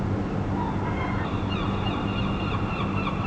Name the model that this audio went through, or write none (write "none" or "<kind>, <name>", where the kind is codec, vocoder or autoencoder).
none